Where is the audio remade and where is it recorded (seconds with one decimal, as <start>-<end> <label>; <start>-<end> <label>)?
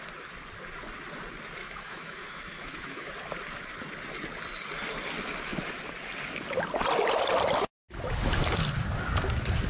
0.0-1.6 recorded; 1.6-3.1 remade; 3.1-9.7 recorded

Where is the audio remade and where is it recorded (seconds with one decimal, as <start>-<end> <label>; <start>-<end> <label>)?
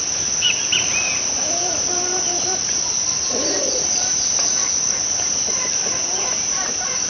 0.0-4.6 remade; 4.6-5.1 recorded; 5.1-7.1 remade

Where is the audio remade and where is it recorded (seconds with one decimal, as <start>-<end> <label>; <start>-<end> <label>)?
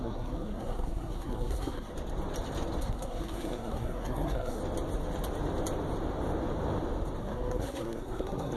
0.0-1.9 remade; 1.9-2.8 recorded; 2.8-4.6 remade; 4.6-7.2 recorded; 7.2-8.6 remade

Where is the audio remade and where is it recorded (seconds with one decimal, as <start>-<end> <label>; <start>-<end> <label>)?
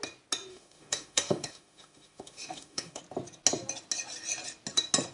0.0-0.5 recorded; 0.5-3.0 remade; 3.0-5.1 recorded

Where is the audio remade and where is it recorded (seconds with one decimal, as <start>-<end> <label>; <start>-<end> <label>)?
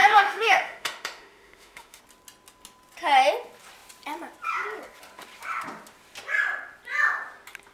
0.0-2.0 remade; 2.0-7.7 recorded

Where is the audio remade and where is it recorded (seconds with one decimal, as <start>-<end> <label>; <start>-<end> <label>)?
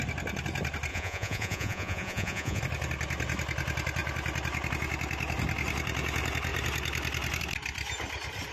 0.0-0.9 recorded; 0.9-2.6 remade; 2.6-8.5 recorded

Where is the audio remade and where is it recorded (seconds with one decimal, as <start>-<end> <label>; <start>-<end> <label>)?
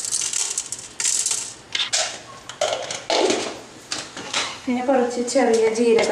0.0-4.2 recorded; 4.2-4.8 remade; 4.8-6.1 recorded